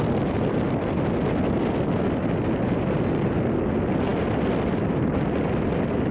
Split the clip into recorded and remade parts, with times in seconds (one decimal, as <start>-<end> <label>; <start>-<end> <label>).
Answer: 0.0-6.1 recorded